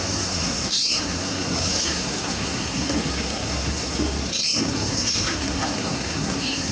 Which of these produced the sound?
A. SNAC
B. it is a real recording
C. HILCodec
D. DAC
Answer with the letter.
A